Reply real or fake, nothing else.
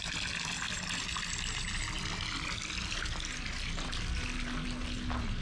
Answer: real